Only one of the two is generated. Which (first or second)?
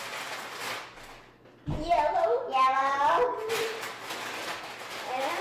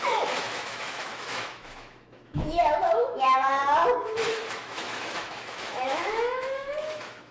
second